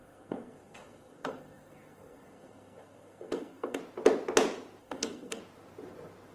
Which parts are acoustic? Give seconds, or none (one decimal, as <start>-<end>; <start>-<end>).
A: 3.8-4.8; 5.4-6.3